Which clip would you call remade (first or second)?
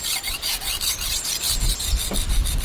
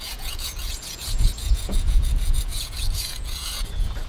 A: second